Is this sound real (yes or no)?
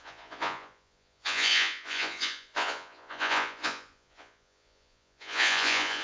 no